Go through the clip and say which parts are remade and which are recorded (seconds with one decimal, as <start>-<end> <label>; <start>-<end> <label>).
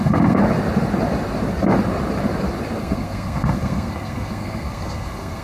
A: 0.0-0.4 remade; 0.4-2.8 recorded; 2.8-5.4 remade